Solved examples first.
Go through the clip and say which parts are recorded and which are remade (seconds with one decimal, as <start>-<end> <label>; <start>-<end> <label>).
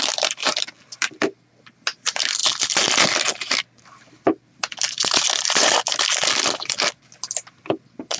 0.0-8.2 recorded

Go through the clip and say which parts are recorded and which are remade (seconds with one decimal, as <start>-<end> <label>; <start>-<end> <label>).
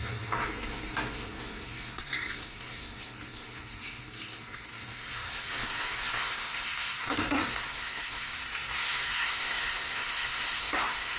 0.0-11.2 remade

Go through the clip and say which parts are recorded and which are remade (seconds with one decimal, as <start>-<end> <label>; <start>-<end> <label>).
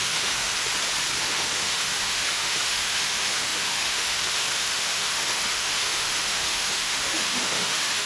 0.0-0.5 remade; 0.5-1.2 recorded; 1.2-8.1 remade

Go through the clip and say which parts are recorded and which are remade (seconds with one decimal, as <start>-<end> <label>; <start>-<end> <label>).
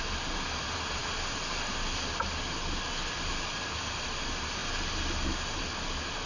0.0-6.3 recorded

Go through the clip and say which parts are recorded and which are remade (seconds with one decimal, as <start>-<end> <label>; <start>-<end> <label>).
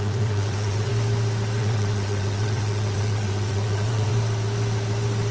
0.0-0.9 remade; 0.9-1.6 recorded; 1.6-4.1 remade; 4.1-5.3 recorded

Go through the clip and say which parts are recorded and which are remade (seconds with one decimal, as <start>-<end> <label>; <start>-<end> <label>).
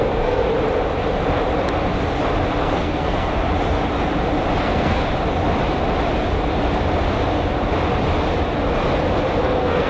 0.0-0.4 remade; 0.4-2.6 recorded; 2.6-3.4 remade; 3.4-4.6 recorded; 4.6-5.0 remade; 5.0-9.4 recorded; 9.4-9.9 remade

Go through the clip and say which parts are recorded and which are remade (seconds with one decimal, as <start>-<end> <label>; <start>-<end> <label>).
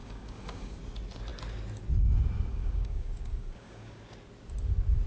0.0-0.8 remade; 0.8-2.5 recorded; 2.5-4.0 remade; 4.0-5.1 recorded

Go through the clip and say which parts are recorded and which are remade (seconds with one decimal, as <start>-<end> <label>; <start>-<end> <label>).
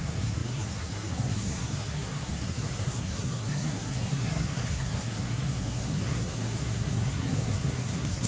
0.0-8.3 remade